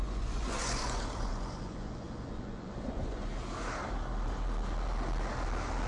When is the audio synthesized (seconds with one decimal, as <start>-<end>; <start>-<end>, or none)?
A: 0.0-3.3